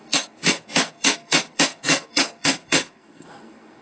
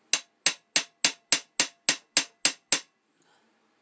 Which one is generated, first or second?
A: first